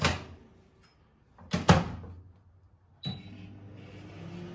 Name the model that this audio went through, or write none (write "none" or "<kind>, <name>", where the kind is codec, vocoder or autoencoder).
none